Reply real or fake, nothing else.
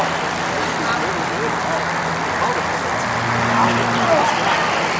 real